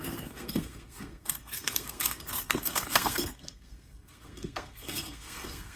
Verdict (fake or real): fake